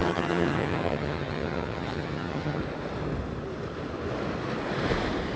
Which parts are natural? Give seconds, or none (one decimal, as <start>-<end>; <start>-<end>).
2.6-5.4